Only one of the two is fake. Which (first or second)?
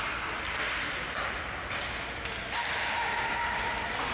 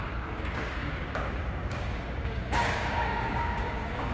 second